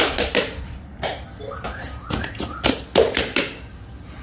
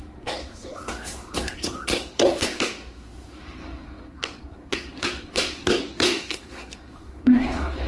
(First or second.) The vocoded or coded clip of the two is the second